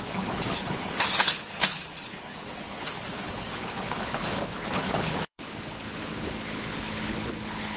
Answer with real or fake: fake